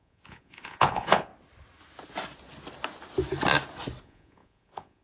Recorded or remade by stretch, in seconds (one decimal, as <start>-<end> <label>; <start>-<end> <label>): 0.0-1.3 remade; 1.3-4.0 recorded; 4.0-5.0 remade